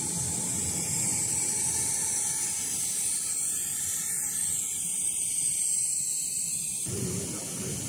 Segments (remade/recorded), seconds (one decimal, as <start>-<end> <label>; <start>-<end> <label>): 0.0-5.5 recorded; 5.5-7.0 remade; 7.0-7.9 recorded